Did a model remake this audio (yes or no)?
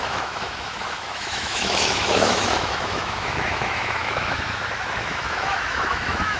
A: yes